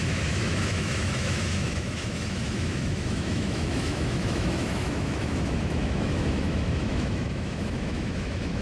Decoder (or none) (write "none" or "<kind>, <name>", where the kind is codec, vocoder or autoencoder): autoencoder, DAC-VAE